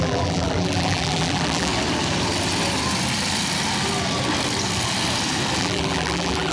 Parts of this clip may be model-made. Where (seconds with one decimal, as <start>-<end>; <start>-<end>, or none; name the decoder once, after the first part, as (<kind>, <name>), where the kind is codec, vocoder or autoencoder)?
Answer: 0.0-1.7 (vocoder, BigVGAN v2); 5.6-6.5